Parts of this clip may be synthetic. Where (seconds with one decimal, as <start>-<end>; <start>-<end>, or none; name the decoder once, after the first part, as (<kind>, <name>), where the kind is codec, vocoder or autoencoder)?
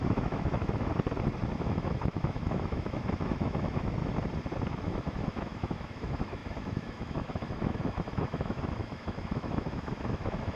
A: 0.0-0.9 (autoencoder, DAC-VAE); 1.6-4.0; 4.7-10.6